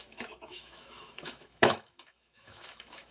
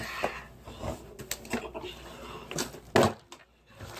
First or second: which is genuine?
second